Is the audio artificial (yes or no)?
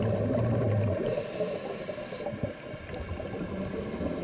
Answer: no